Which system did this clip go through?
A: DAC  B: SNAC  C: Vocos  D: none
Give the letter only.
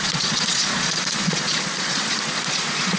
C